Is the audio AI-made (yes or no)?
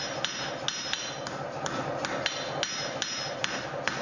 no